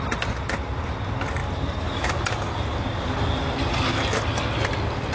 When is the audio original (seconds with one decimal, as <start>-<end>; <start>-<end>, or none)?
0.0-1.4; 2.7-5.1